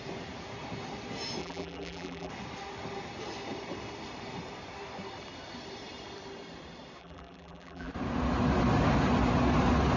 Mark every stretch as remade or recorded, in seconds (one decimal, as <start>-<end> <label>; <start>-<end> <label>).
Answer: 0.0-1.4 recorded; 1.4-2.3 remade; 2.3-7.0 recorded; 7.0-7.9 remade; 7.9-10.0 recorded

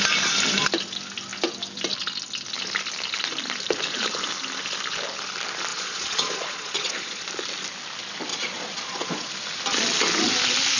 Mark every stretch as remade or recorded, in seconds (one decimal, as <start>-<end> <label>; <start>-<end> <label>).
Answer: 0.0-5.7 recorded; 5.7-7.3 remade; 7.3-8.3 recorded; 8.3-9.3 remade; 9.3-10.8 recorded

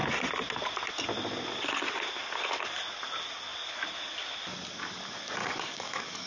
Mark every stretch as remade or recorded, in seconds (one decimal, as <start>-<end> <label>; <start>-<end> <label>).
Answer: 0.0-5.4 recorded; 5.4-6.3 remade

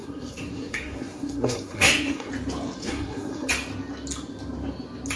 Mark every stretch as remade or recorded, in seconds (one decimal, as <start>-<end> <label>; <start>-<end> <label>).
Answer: 0.0-2.3 remade; 2.3-2.8 recorded; 2.8-3.5 remade; 3.5-5.2 recorded

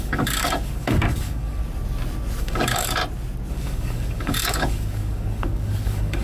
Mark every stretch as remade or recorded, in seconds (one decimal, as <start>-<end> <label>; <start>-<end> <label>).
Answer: 0.0-1.6 remade; 1.6-2.4 recorded; 2.4-3.0 remade; 3.0-3.5 recorded; 3.5-6.2 remade